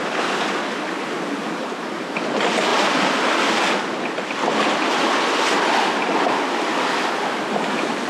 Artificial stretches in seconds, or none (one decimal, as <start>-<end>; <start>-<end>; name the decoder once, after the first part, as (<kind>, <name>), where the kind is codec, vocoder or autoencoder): 1.6-2.1 (vocoder, BigVGAN v2)